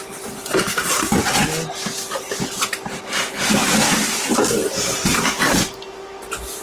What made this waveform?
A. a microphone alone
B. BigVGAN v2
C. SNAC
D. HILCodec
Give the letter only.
A